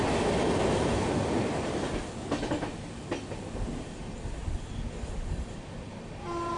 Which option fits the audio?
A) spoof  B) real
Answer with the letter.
B